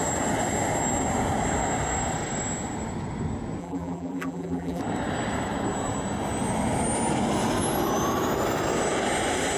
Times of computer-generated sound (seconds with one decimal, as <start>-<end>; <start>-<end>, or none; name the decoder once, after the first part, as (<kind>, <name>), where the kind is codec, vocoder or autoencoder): 3.6-4.8 (vocoder, BigVGAN v2)